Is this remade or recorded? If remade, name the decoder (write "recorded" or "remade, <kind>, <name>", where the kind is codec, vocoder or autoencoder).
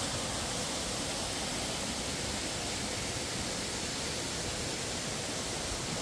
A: recorded